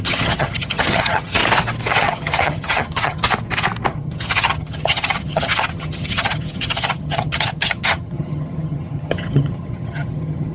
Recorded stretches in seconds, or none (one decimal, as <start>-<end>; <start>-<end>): 1.4-1.9; 3.2-3.9